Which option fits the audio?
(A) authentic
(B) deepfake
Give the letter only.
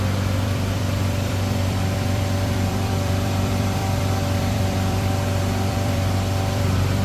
B